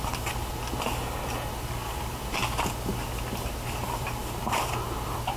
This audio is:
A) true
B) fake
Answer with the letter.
A